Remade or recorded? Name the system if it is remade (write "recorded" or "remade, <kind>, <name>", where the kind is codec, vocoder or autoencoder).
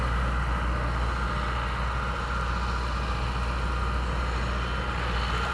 recorded